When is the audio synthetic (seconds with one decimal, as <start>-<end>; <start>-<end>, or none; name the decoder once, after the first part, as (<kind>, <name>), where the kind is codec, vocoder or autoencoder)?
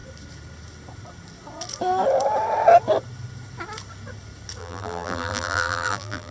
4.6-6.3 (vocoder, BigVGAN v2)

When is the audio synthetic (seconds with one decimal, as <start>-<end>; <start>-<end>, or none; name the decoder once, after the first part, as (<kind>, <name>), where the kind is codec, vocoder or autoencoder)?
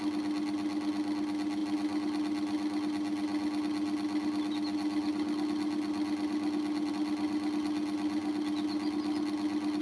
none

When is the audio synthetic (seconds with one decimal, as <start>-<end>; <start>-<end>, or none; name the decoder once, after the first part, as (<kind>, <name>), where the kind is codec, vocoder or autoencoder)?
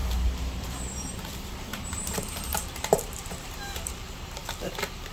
0.6-4.4 (vocoder, BigVGAN v2)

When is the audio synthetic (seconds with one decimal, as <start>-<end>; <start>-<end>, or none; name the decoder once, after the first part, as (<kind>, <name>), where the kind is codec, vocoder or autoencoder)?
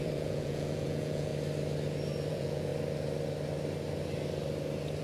0.0-1.3 (vocoder, Vocos); 2.3-2.7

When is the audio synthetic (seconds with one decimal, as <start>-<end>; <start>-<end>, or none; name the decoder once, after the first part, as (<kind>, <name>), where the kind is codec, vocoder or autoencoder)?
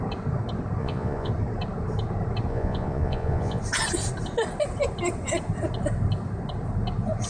0.8-1.3 (vocoder, Vocos); 2.5-3.6